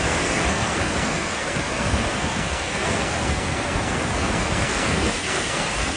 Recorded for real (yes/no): no